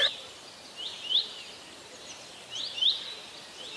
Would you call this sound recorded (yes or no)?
yes